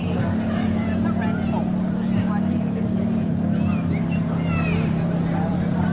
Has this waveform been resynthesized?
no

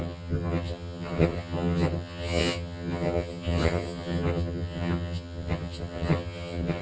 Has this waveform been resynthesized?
yes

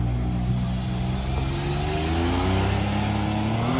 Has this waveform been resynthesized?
no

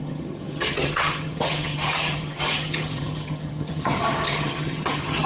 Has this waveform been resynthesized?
yes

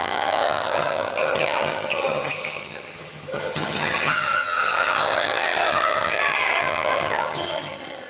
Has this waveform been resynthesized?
yes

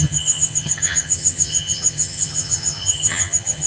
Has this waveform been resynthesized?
yes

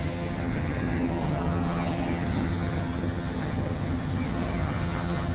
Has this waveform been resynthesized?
yes